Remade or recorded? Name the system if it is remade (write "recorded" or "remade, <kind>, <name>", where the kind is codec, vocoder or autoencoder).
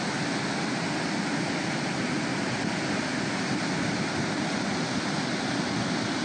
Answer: recorded